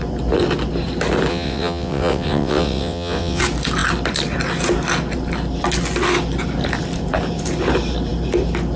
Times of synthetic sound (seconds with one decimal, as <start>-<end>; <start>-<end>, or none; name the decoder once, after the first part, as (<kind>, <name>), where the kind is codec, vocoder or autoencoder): 1.3-3.4 (vocoder, WaveNeXt)